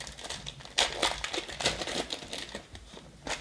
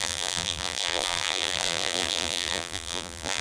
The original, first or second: first